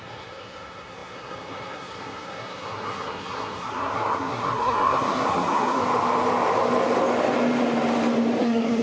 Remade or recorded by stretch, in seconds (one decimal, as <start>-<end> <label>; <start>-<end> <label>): 0.0-5.8 remade; 5.8-8.4 recorded; 8.4-8.8 remade